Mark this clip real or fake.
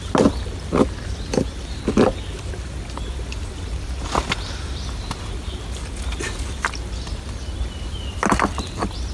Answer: real